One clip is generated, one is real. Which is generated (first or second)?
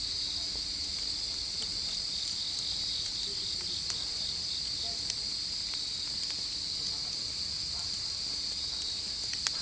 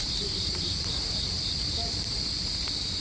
second